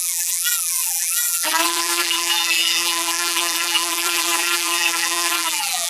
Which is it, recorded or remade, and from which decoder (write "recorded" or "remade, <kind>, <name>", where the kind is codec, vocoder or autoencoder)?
remade, vocoder, BigVGAN v2